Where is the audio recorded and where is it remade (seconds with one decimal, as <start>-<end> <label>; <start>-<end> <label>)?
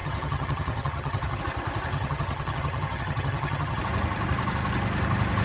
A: 0.0-1.4 remade; 1.4-1.9 recorded; 1.9-3.8 remade; 3.8-5.4 recorded